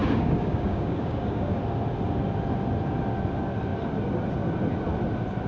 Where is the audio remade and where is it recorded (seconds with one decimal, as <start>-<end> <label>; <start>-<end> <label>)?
0.0-1.6 remade; 1.6-5.5 recorded